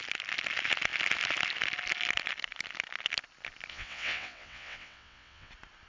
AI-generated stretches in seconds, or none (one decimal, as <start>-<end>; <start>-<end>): 3.7-5.5